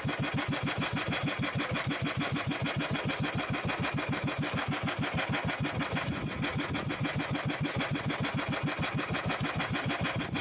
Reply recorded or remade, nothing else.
recorded